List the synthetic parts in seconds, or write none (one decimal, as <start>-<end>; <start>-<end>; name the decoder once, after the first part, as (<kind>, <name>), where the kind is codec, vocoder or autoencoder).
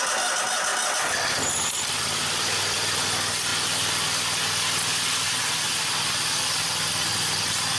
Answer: none